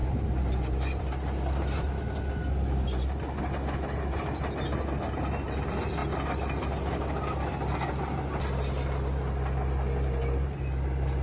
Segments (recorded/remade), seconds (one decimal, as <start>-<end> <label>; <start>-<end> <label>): 0.0-1.1 remade; 1.1-11.2 recorded